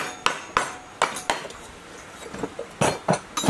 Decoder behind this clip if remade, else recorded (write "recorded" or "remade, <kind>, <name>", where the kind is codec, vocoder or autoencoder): recorded